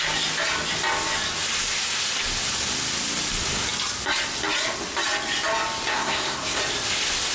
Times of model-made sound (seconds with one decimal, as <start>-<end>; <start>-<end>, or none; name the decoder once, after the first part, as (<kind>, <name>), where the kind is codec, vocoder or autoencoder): 5.9-6.6 (codec, SNAC)